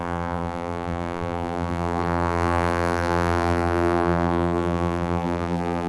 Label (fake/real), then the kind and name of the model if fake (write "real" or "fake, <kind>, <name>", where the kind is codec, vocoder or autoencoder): fake, vocoder, BigVGAN v2